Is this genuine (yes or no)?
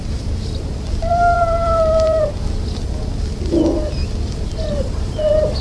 no